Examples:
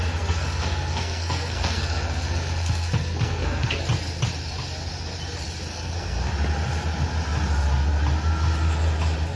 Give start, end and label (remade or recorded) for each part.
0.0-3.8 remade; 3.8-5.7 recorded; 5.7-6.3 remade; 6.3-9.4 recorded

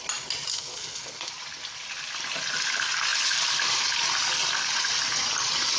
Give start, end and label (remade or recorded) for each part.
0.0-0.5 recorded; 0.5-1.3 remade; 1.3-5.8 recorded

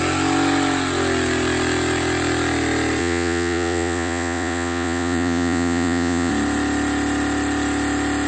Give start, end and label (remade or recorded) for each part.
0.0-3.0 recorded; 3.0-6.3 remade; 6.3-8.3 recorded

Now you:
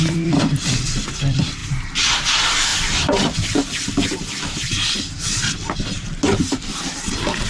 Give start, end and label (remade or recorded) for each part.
0.0-1.6 remade; 1.6-2.3 recorded; 2.3-7.5 remade